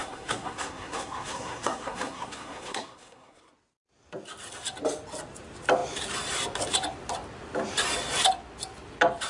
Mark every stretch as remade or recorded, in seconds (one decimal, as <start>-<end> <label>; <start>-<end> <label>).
0.0-3.4 remade; 3.4-9.3 recorded